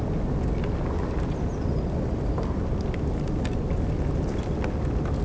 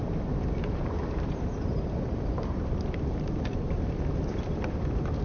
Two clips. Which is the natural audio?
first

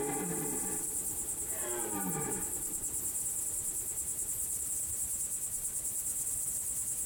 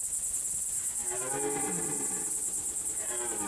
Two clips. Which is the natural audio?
second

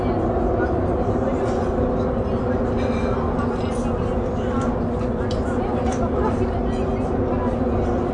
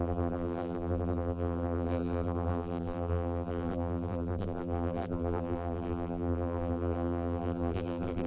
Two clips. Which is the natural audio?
first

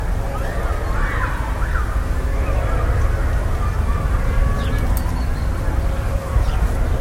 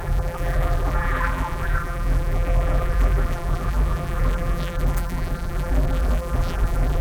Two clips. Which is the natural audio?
first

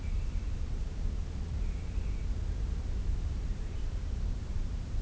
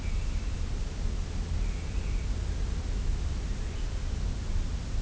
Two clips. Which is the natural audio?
second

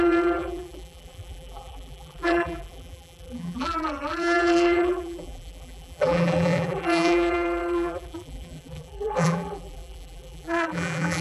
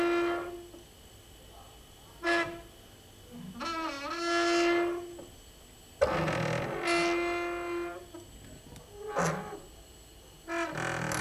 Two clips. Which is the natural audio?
second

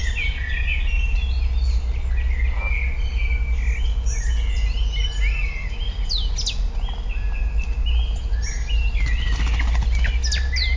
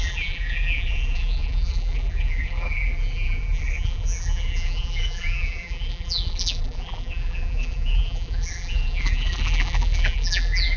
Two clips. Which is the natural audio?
first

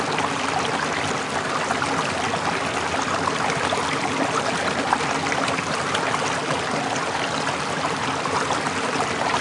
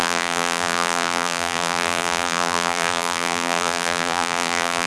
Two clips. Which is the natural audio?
first